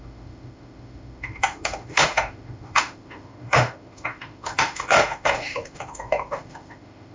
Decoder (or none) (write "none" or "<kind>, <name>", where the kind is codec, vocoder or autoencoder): autoencoder, DAC-VAE